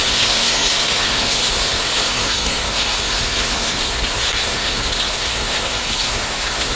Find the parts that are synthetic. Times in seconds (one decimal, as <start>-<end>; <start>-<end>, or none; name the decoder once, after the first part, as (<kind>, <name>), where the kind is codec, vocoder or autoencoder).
0.0-6.8 (codec, SNAC)